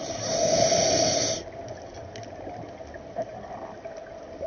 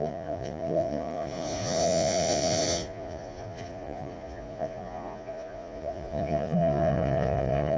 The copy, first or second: second